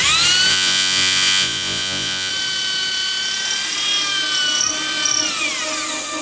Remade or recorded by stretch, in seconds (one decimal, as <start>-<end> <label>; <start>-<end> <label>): 0.0-0.5 recorded; 0.5-2.3 remade; 2.3-6.2 recorded